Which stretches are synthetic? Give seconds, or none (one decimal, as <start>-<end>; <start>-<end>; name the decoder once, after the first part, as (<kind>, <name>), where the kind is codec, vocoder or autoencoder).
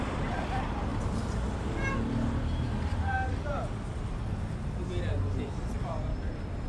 none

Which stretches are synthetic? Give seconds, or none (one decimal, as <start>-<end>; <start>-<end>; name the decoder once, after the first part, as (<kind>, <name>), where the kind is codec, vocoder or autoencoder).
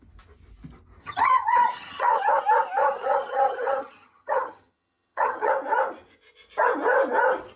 1.0-2.4 (vocoder, HiFi-GAN); 2.8-5.5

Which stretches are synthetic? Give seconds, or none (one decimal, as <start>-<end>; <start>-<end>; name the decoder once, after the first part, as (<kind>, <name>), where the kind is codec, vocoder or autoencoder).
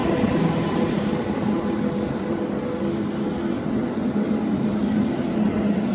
none